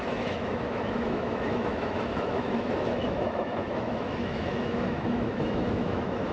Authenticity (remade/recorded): remade